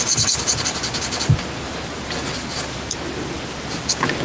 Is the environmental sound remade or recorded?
recorded